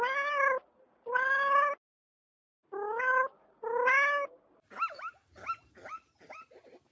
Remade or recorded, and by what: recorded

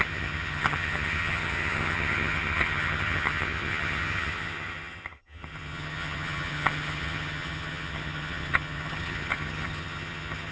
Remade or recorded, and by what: remade, vocoder, HiFi-GAN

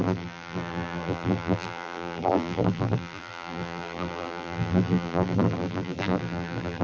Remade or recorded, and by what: remade, vocoder, BigVGAN v2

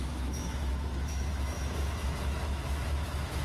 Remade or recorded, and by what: remade, autoencoder, DAC-VAE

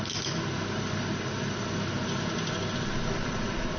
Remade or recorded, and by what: recorded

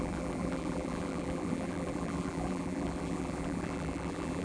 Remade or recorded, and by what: remade, vocoder, BigVGAN v2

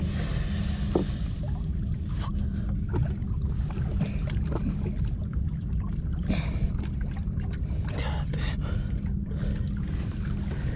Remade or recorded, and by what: recorded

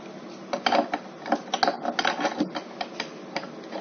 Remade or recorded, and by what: recorded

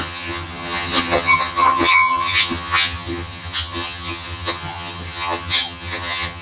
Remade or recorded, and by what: remade, vocoder, HiFi-GAN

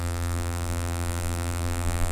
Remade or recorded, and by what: remade, vocoder, BigVGAN v2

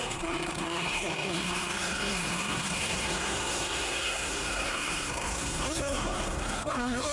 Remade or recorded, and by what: remade, codec, SNAC